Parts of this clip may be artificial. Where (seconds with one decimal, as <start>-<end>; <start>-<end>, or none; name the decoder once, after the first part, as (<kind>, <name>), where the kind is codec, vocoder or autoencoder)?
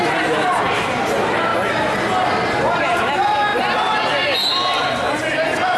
none